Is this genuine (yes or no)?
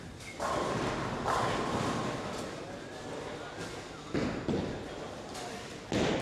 yes